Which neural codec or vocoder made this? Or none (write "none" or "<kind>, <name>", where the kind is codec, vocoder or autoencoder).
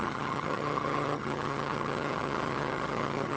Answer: vocoder, HiFi-GAN